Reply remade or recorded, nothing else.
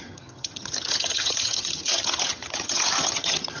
remade